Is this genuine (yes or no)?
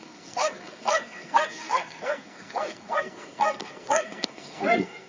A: no